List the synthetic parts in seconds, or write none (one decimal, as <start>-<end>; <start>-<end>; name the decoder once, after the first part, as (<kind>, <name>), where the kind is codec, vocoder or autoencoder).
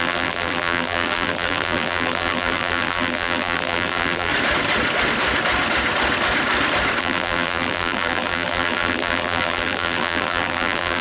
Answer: 0.0-4.3 (vocoder, BigVGAN v2); 7.0-11.0